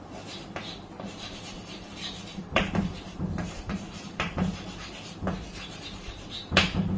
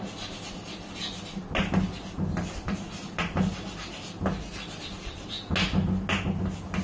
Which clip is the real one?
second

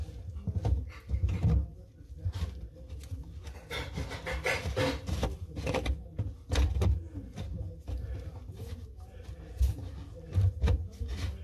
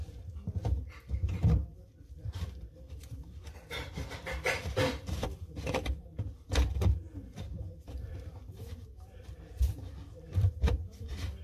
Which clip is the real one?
first